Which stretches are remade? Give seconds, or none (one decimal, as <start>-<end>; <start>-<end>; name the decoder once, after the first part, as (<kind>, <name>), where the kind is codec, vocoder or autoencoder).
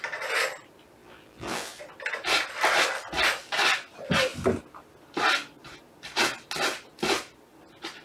1.0-1.8 (vocoder, BigVGAN v2)